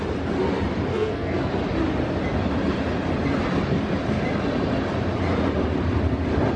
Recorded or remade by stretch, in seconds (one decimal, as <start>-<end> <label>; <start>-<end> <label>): 0.0-0.9 recorded; 0.9-1.5 remade; 1.5-6.6 recorded

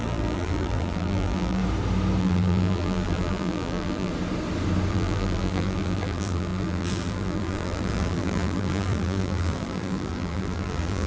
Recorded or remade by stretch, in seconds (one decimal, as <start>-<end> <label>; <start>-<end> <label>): 0.0-1.6 remade; 1.6-2.2 recorded; 2.2-4.1 remade; 4.1-4.9 recorded; 4.9-11.1 remade